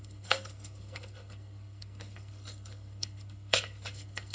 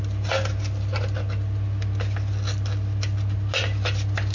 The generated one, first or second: first